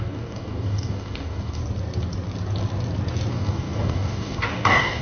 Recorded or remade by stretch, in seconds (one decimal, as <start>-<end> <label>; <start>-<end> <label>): 0.0-1.6 remade; 1.6-3.3 recorded; 3.3-5.0 remade